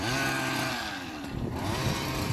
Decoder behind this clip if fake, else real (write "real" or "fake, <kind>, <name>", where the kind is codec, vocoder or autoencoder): fake, vocoder, BigVGAN v2